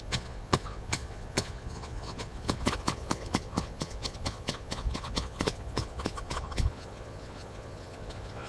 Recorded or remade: remade